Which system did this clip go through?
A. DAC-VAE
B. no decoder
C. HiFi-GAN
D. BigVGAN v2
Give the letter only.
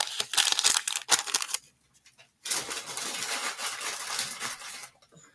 D